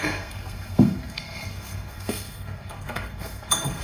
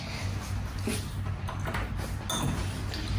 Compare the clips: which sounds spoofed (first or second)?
first